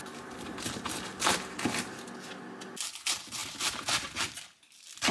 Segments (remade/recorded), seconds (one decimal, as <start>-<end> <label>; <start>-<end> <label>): 0.0-5.1 recorded